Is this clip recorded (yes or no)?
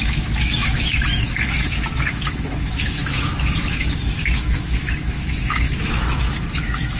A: no